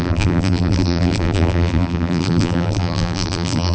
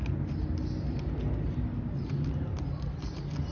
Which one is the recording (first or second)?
second